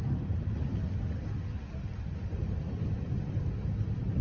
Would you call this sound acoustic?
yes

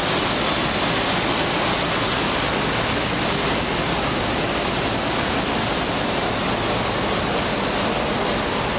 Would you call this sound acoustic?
yes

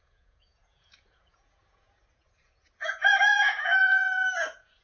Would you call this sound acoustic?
no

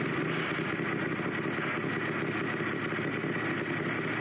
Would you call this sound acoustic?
yes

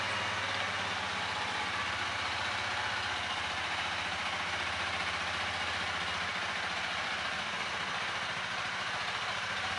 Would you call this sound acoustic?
yes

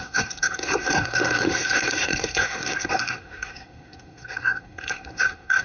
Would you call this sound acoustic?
no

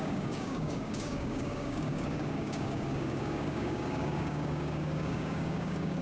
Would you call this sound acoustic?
no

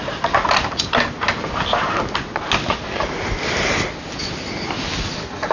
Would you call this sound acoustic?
yes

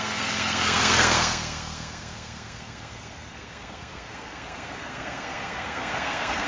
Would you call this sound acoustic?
no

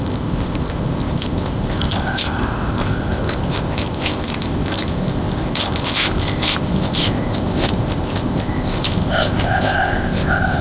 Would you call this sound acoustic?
no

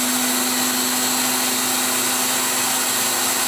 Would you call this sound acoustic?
yes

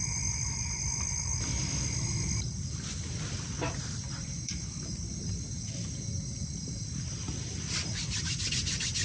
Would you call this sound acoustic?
yes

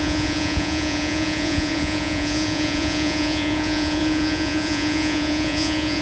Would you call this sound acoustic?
no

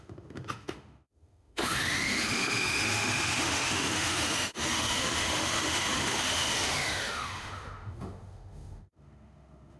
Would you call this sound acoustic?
no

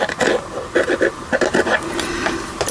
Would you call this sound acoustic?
yes